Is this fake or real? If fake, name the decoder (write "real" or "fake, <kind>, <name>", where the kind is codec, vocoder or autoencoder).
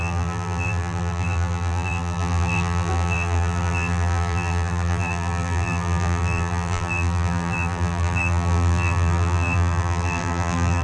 fake, vocoder, BigVGAN v2